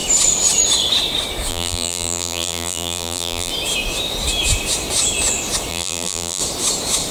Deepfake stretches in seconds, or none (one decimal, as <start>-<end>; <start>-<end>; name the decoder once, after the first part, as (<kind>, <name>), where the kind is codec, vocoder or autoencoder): 1.5-3.5 (vocoder, BigVGAN v2); 5.7-6.4